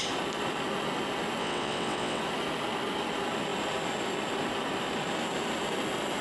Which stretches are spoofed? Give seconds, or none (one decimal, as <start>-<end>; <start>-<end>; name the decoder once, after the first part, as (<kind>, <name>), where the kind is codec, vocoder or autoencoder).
1.4-2.2 (vocoder, WaveNeXt)